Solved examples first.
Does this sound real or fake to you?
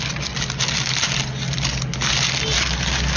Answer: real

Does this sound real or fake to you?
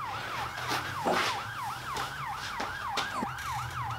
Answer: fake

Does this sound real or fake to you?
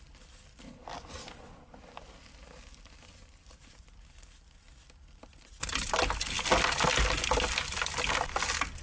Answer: real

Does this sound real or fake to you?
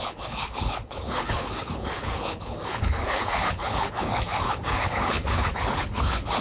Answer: fake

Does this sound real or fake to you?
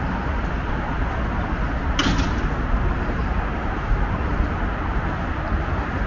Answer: real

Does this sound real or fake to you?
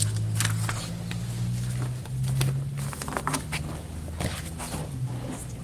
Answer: real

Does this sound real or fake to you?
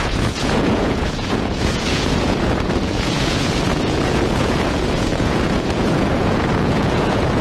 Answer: fake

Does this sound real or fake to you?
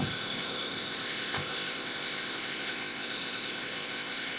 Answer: fake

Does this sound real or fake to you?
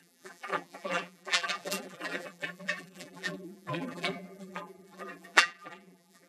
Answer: fake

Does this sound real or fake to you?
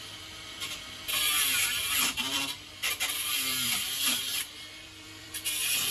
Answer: fake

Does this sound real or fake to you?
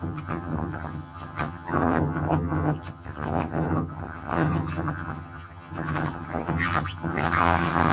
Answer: fake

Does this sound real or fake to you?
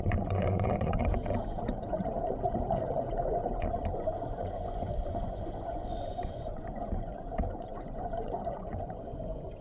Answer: fake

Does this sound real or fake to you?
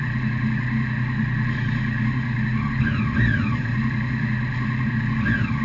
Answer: real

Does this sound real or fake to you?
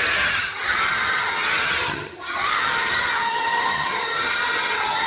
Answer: fake